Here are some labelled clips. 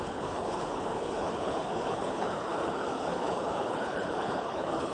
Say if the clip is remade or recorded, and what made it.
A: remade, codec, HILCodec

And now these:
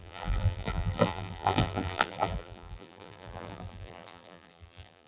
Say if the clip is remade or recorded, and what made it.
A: remade, vocoder, BigVGAN v2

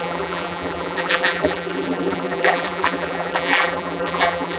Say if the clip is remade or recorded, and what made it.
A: remade, vocoder, BigVGAN v2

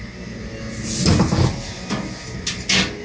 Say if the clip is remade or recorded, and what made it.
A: recorded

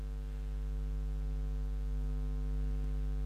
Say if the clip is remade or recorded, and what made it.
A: recorded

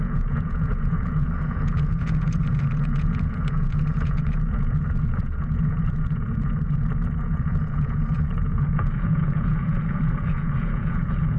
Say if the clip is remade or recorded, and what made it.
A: remade, vocoder, Vocos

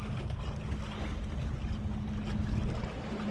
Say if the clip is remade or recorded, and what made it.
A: recorded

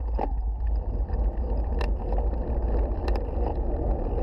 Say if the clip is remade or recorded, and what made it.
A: recorded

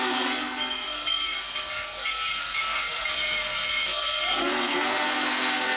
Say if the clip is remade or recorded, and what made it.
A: remade, codec, SNAC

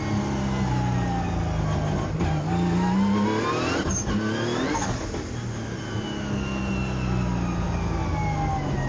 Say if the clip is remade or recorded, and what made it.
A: recorded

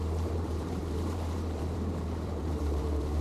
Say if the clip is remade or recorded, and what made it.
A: remade, vocoder, BigVGAN v2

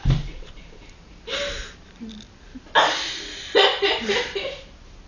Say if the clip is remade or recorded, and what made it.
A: recorded